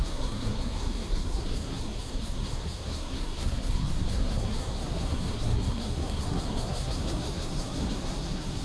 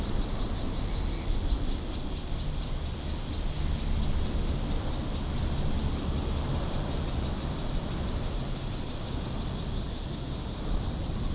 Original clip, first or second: second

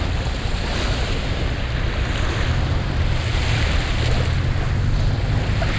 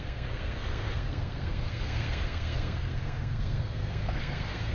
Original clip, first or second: first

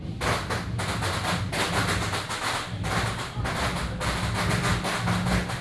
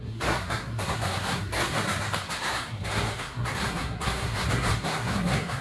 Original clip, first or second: first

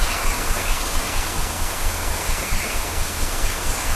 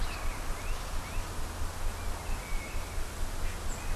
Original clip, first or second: second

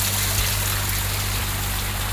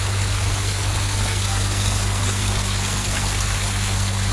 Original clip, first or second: first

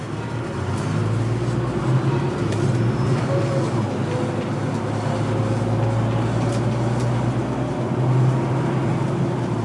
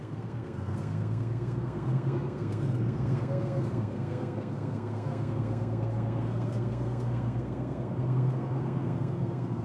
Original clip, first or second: first